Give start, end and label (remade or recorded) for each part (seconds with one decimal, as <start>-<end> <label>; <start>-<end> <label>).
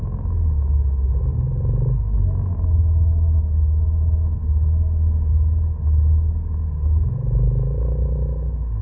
0.0-4.4 recorded; 4.4-5.3 remade; 5.3-8.8 recorded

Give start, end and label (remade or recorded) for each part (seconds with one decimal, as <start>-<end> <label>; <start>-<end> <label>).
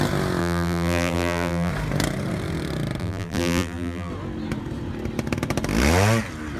0.0-0.4 recorded; 0.4-1.7 remade; 1.7-3.0 recorded; 3.0-4.1 remade; 4.1-6.6 recorded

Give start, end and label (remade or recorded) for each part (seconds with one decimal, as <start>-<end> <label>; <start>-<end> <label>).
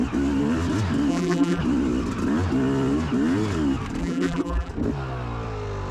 0.0-1.1 recorded; 1.1-1.6 remade; 1.6-4.0 recorded; 4.0-4.7 remade; 4.7-5.9 recorded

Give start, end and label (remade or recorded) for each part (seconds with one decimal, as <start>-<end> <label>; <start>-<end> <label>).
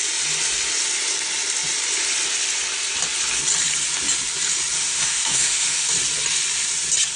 0.0-4.8 recorded; 4.8-5.9 remade; 5.9-7.2 recorded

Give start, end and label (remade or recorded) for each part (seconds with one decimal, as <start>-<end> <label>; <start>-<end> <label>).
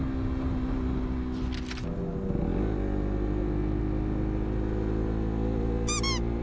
0.0-6.4 recorded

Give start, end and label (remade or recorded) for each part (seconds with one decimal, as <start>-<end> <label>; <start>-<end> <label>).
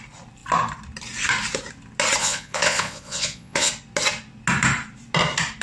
0.0-2.2 recorded; 2.2-3.7 remade; 3.7-5.6 recorded